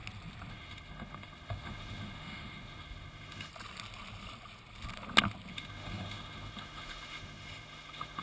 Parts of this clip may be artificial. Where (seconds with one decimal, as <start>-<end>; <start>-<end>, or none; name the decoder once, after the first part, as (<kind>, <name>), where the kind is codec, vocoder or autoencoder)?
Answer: 0.5-3.5 (autoencoder, DAC-VAE); 5.5-8.2